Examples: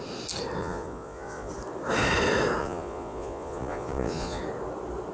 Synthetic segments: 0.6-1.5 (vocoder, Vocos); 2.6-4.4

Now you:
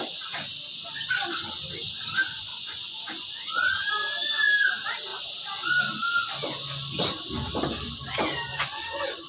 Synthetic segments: 2.5-3.9 (vocoder, Vocos); 8.5-9.3

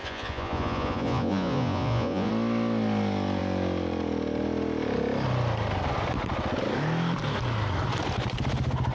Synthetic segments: 0.0-2.3 (vocoder, Vocos)

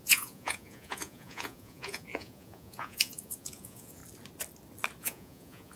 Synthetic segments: 0.0-4.0 (vocoder, Vocos); 5.0-5.8

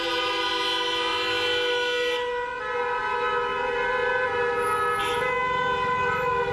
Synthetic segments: none

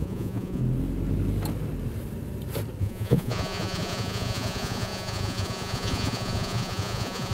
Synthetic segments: 0.0-0.6 (vocoder, Vocos); 2.8-7.3

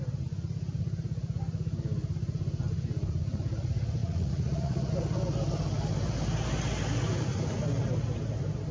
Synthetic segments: 4.0-4.9 (vocoder, Vocos)